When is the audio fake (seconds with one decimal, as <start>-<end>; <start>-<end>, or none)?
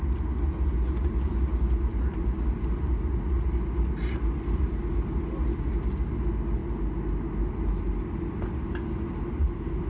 1.9-2.4